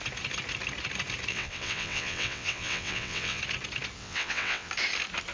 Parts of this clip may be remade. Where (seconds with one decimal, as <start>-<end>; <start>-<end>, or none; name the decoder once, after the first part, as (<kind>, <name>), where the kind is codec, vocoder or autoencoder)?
1.3-3.4 (vocoder, WaveNeXt); 4.0-4.7